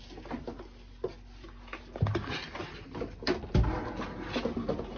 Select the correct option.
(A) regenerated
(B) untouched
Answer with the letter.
B